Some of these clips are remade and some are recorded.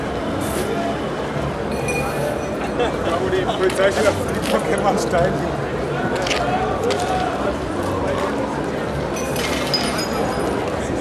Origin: recorded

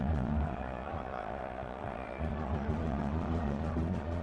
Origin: remade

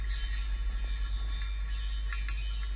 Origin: recorded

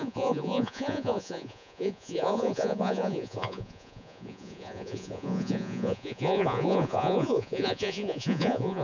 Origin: remade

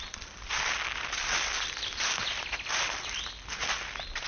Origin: recorded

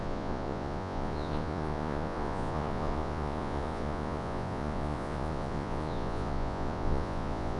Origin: remade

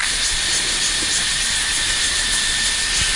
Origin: recorded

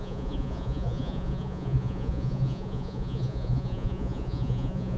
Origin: remade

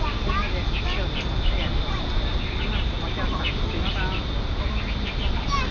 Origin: recorded